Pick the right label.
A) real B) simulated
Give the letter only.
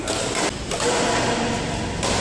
A